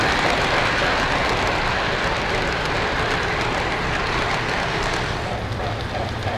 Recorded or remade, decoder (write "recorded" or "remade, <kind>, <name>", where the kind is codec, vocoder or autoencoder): recorded